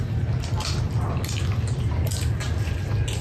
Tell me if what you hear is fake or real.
real